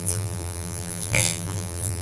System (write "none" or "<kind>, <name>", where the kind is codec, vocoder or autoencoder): vocoder, BigVGAN v2